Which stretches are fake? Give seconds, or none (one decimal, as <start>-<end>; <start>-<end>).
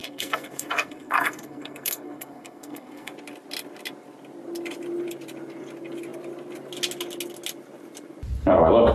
0.0-3.1